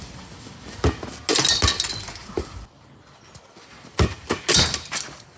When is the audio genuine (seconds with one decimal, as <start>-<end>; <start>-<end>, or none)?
0.0-5.4